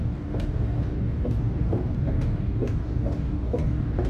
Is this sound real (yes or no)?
no